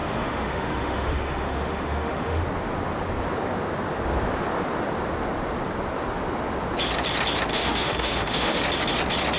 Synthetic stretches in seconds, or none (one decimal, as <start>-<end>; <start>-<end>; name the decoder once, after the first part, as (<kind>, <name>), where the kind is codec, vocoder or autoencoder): 0.0-2.4 (autoencoder, DAC-VAE); 7.5-8.6